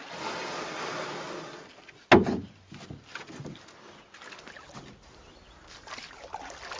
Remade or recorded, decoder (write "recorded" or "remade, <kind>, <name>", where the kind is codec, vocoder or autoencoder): recorded